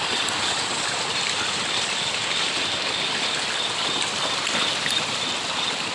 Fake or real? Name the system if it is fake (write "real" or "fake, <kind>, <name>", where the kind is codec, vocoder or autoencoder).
real